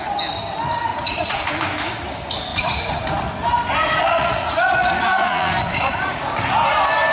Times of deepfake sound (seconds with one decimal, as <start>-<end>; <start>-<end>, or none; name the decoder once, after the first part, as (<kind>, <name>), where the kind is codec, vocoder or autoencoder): 0.9-1.5 (vocoder, Vocos); 2.5-3.0; 4.0-6.2